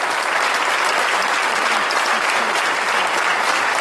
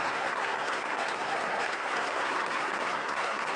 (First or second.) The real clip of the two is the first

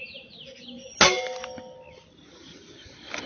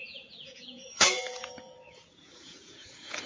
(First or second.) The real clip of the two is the first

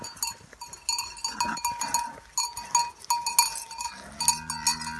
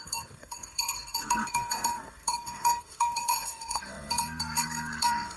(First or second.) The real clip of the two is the first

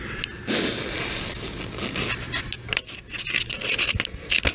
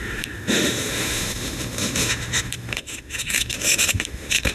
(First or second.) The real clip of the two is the first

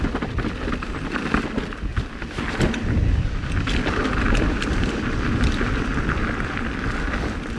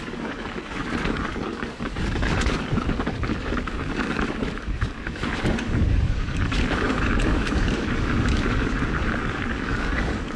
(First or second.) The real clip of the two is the first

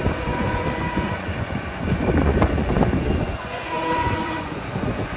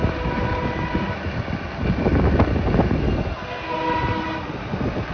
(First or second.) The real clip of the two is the second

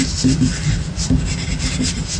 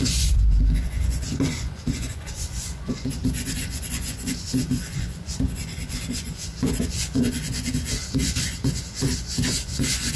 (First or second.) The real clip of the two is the first